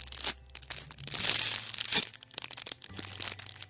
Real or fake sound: real